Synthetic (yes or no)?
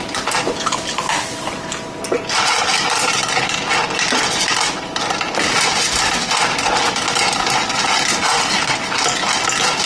no